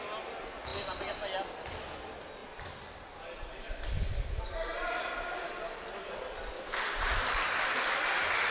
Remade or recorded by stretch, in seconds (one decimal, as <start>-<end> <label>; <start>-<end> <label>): 0.0-8.5 recorded